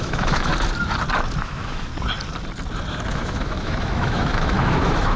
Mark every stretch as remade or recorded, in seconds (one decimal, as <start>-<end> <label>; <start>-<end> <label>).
0.0-0.5 remade; 0.5-1.4 recorded; 1.4-1.9 remade; 1.9-3.1 recorded; 3.1-5.2 remade